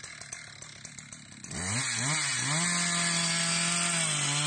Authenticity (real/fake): real